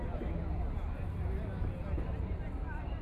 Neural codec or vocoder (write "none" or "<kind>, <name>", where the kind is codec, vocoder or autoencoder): none